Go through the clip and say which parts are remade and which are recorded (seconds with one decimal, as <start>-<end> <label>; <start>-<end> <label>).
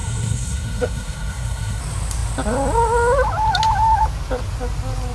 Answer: 0.0-1.8 remade; 1.8-5.1 recorded